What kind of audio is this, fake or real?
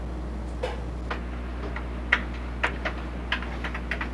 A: real